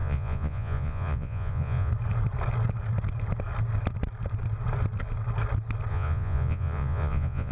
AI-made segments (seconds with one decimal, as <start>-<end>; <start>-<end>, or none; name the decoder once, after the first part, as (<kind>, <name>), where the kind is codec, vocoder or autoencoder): 0.0-1.9 (vocoder, Vocos); 5.9-7.5